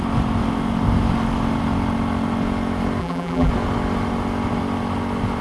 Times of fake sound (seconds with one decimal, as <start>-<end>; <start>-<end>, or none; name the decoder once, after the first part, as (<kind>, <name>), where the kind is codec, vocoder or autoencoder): 3.0-3.5 (vocoder, BigVGAN v2)